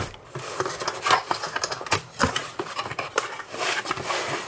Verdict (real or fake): fake